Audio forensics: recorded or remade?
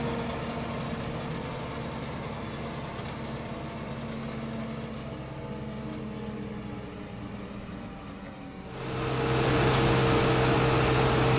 recorded